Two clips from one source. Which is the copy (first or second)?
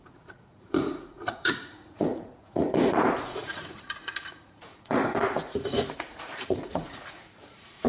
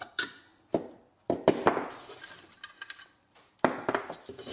first